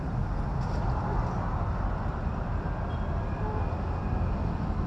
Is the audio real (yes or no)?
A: yes